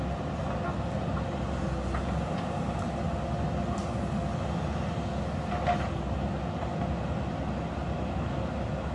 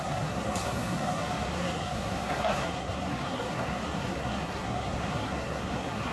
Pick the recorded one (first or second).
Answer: first